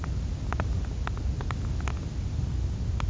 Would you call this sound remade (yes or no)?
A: no